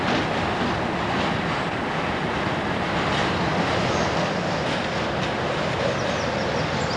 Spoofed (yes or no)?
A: no